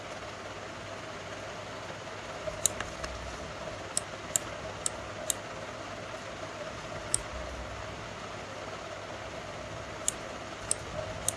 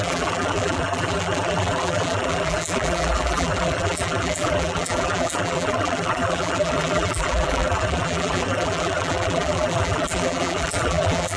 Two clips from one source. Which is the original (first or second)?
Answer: first